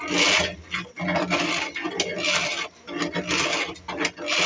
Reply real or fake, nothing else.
real